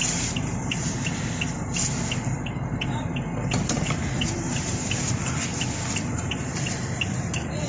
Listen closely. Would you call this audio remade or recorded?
remade